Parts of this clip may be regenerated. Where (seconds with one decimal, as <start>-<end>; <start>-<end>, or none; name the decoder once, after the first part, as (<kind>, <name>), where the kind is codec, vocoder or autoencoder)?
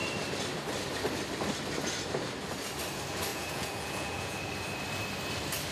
3.3-4.5 (vocoder, Vocos)